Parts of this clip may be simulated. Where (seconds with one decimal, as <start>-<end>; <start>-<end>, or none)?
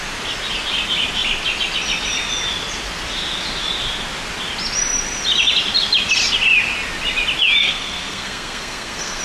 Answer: 7.6-9.2